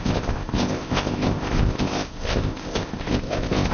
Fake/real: fake